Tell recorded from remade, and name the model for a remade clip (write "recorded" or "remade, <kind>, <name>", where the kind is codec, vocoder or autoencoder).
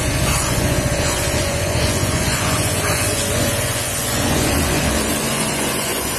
remade, vocoder, Vocos